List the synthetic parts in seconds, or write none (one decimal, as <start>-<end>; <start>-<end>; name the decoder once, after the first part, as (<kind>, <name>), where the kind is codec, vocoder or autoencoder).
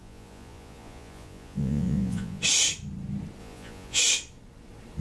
0.0-2.4 (vocoder, Vocos); 3.4-4.0